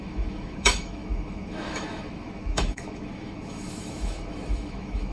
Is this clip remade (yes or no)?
yes